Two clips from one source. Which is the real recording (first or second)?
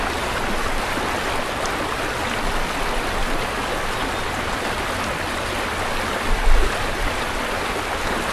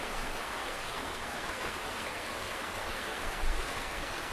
first